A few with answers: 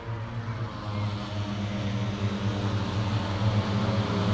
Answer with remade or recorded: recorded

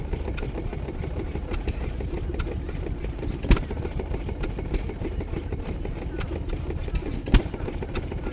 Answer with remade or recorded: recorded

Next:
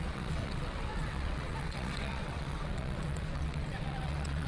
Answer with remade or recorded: remade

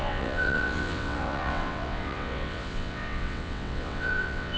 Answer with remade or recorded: remade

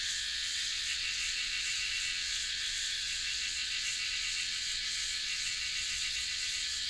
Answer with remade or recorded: remade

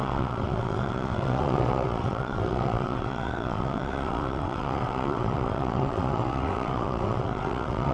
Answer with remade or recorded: remade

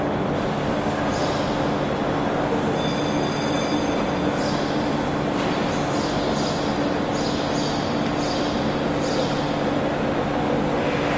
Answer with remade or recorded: recorded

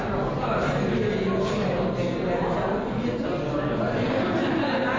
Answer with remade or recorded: recorded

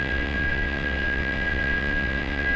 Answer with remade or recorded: remade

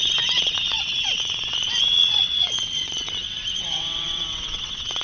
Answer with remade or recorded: remade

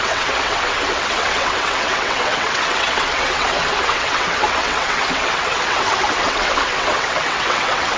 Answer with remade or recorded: remade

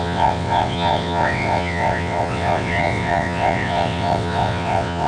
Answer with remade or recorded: remade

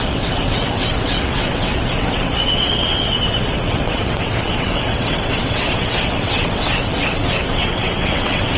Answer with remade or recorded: remade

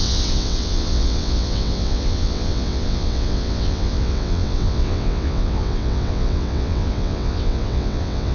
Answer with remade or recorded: remade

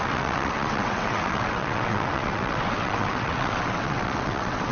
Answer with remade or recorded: remade